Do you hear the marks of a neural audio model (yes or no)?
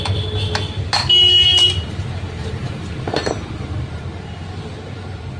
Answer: no